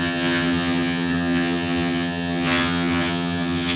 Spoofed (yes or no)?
yes